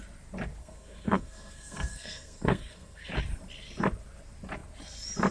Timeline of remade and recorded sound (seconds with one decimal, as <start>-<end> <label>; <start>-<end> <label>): 0.0-0.6 recorded; 0.6-3.1 remade; 3.1-5.3 recorded